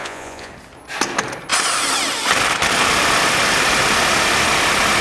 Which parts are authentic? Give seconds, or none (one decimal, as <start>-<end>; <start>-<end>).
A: 0.5-5.0